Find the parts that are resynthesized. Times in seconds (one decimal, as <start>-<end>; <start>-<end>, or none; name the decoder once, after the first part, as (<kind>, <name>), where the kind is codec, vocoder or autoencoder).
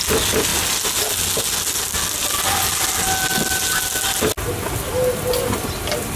none